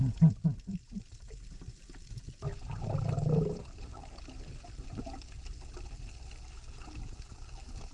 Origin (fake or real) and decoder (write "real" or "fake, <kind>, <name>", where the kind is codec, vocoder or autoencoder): real